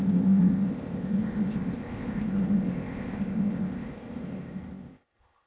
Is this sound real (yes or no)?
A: no